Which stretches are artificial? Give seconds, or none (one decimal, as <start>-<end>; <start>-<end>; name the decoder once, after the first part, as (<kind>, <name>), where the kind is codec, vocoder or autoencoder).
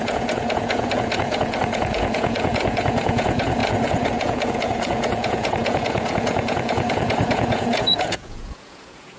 0.0-9.2 (vocoder, Vocos)